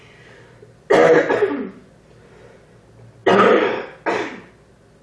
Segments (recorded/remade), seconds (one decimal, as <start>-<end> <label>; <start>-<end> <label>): 0.0-5.0 recorded